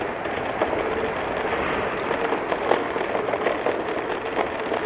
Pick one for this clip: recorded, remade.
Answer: recorded